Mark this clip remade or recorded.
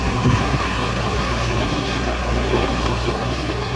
remade